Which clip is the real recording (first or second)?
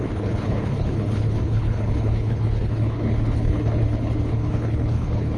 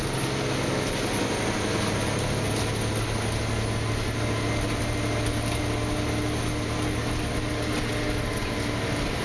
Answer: second